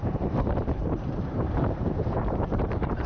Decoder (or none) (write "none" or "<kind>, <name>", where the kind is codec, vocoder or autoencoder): vocoder, BigVGAN v2